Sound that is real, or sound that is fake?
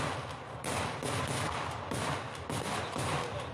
real